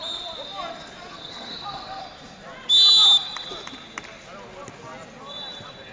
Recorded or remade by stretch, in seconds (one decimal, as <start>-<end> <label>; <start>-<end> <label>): 0.0-1.1 recorded; 1.1-2.0 remade; 2.0-5.9 recorded